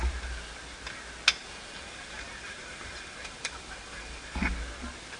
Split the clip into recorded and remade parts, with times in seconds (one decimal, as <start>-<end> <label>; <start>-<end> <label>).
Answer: 0.0-1.4 recorded; 1.4-4.5 remade; 4.5-5.2 recorded